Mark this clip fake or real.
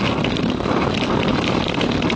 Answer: real